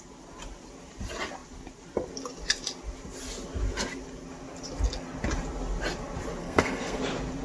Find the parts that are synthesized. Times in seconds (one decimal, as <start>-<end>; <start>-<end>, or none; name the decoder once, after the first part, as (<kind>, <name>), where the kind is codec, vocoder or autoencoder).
6.4-7.0 (codec, SNAC)